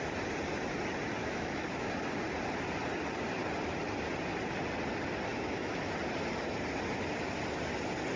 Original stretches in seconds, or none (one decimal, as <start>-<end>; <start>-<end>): 0.0-1.2; 1.9-5.3; 5.9-8.2